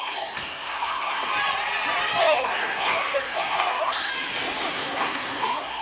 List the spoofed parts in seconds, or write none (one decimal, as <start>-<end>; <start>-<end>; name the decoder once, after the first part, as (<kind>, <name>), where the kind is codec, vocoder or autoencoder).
0.0-1.3 (codec, SNAC); 2.2-4.1; 4.7-5.8